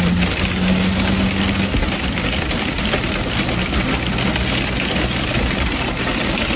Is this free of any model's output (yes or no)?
yes